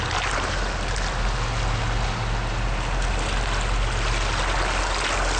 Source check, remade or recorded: recorded